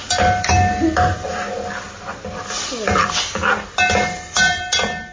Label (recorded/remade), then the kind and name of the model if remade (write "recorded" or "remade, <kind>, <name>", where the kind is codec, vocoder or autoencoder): recorded